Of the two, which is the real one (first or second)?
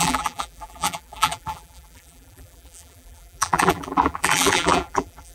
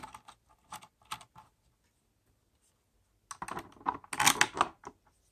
second